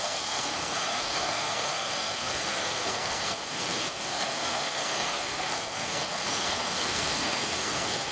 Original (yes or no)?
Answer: no